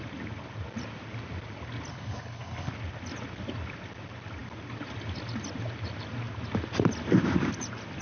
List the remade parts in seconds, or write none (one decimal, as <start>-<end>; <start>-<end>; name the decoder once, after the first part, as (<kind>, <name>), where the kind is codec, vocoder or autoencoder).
1.9-2.7 (codec, HILCodec)